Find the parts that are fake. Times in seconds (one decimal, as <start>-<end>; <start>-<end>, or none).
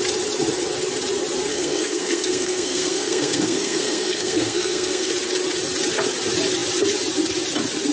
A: 1.5-5.1